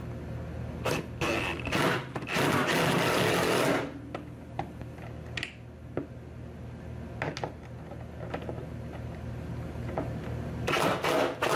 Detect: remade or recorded recorded